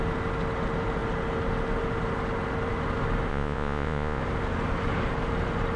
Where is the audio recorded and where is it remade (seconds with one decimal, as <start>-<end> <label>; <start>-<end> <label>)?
0.0-3.3 recorded; 3.3-4.2 remade; 4.2-5.8 recorded